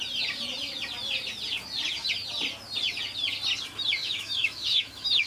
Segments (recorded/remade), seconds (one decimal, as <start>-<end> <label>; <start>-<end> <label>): 0.0-4.0 recorded; 4.0-5.3 remade